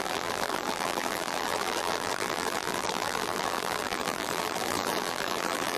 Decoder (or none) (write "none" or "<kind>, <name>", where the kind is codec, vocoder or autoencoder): vocoder, BigVGAN v2